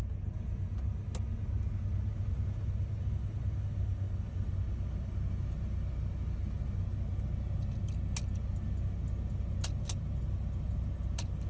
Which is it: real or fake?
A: real